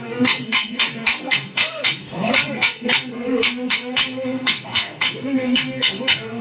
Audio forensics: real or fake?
fake